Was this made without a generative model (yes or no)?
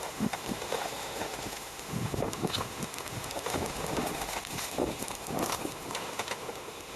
no